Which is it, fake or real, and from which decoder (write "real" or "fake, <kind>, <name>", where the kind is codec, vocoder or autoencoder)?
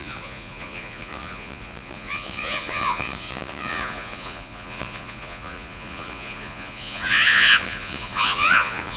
fake, vocoder, Vocos